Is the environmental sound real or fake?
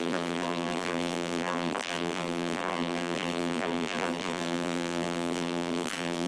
fake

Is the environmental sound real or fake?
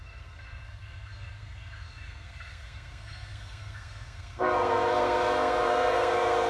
fake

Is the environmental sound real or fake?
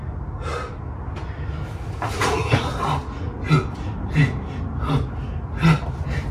real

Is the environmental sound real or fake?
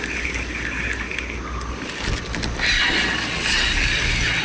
real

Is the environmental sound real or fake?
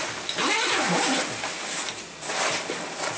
real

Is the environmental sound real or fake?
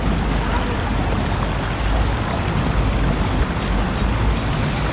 real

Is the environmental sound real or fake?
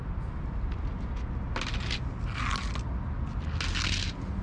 real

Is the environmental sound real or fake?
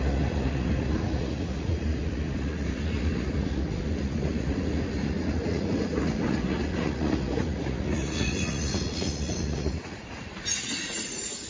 fake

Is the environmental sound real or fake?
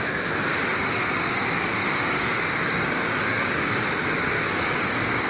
fake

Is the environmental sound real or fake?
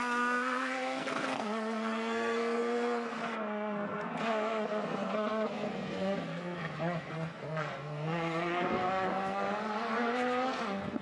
fake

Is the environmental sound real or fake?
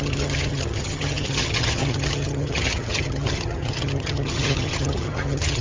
fake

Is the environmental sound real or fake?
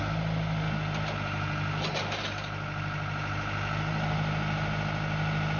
real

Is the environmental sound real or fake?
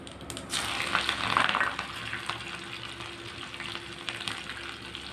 real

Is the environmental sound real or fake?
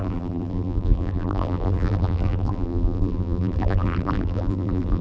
fake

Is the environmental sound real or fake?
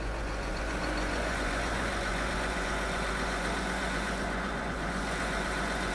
fake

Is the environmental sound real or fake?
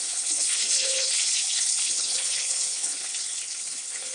fake